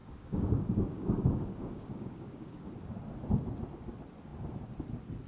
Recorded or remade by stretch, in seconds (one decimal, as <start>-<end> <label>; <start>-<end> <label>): 0.0-2.7 remade; 2.7-5.3 recorded